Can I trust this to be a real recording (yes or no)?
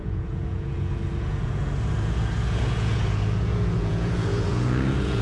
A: no